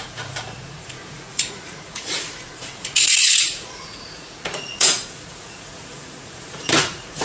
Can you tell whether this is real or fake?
fake